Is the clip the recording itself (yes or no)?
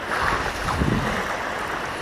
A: yes